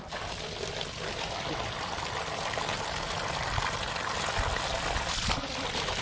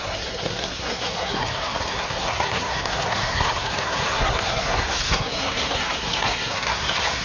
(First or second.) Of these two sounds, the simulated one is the second